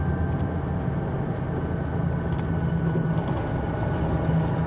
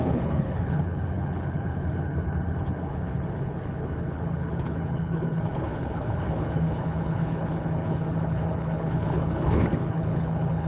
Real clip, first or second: first